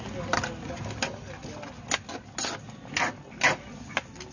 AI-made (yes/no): no